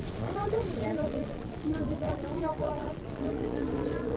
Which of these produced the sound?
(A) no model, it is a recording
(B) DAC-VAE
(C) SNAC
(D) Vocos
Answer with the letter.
D